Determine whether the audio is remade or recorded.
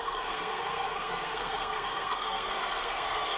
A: remade